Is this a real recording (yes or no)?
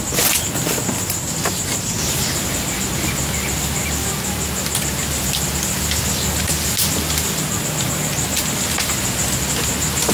yes